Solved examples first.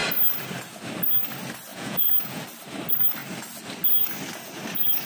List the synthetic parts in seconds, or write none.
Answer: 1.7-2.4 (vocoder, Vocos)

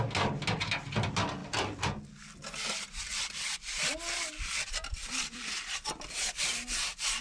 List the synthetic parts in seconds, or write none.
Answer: 1.4-2.0 (vocoder, BigVGAN v2); 3.0-3.9; 4.3-6.2